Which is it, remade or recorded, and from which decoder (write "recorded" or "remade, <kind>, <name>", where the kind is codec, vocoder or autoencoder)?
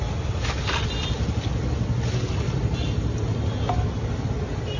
recorded